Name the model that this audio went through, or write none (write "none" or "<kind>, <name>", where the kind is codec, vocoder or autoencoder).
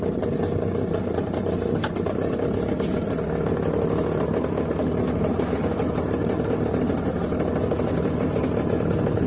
none